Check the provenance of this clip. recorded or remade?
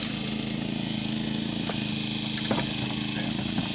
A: recorded